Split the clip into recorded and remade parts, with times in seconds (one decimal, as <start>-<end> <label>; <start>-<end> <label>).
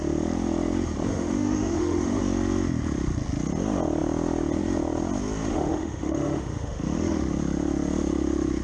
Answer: 0.0-1.1 recorded; 1.1-2.2 remade; 2.2-5.5 recorded; 5.5-7.3 remade; 7.3-8.6 recorded